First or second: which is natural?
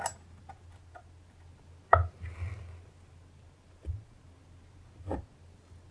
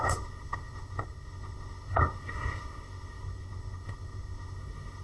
first